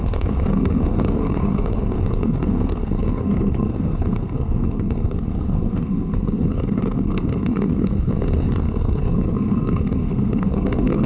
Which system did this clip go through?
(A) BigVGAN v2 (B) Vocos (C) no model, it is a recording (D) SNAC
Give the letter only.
D